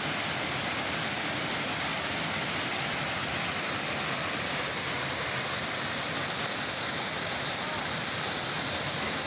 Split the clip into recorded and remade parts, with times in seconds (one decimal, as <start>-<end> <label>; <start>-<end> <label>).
0.0-9.3 recorded